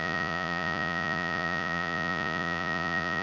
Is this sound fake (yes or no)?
yes